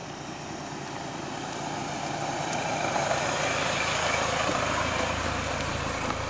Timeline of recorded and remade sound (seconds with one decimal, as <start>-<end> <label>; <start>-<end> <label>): 0.0-3.2 remade; 3.2-4.5 recorded; 4.5-5.2 remade; 5.2-6.3 recorded